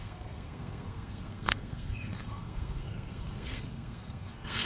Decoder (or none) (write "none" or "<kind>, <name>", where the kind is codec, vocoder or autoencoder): codec, SNAC